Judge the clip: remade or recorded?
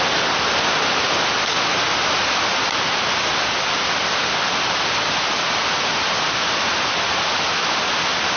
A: recorded